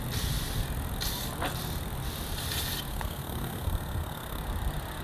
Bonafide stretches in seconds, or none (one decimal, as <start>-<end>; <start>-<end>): 0.0-2.9; 4.4-5.0